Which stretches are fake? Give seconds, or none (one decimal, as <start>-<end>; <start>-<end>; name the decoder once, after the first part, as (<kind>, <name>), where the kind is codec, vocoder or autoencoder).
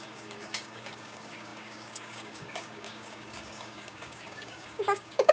0.0-5.3 (codec, DAC)